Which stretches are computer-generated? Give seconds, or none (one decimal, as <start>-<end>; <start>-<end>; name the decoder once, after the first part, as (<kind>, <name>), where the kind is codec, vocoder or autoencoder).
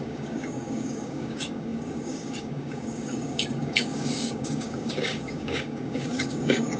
0.0-6.8 (codec, DAC)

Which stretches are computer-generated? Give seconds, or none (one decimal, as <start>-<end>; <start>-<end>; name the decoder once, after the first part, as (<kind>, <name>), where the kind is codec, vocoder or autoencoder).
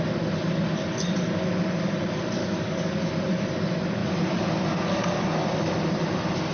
2.4-3.1 (codec, DAC)